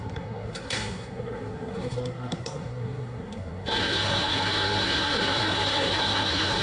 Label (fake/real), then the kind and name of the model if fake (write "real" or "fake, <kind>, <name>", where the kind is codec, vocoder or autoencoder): fake, codec, SNAC